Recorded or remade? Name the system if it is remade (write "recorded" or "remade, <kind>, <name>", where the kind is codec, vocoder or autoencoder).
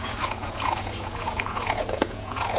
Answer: remade, vocoder, Vocos